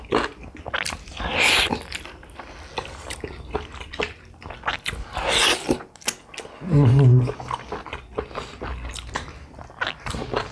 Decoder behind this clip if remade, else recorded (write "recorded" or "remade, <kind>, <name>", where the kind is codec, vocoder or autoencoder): recorded